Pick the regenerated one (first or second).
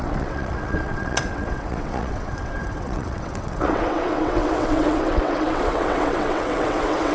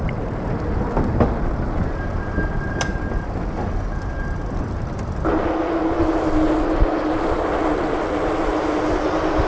first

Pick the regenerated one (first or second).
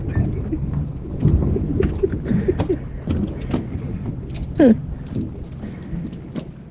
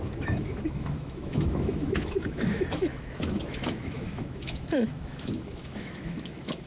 second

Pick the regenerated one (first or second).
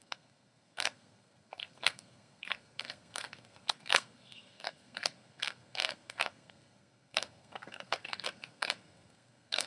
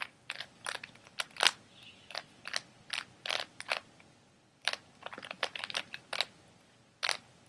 first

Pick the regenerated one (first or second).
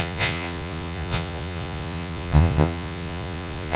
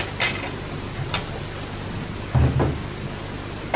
first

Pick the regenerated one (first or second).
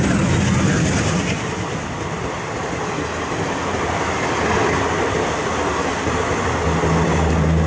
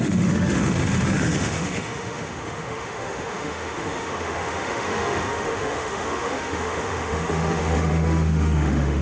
second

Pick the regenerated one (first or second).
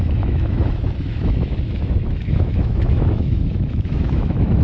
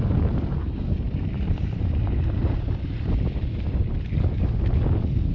first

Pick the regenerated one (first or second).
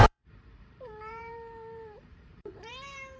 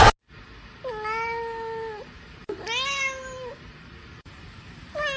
first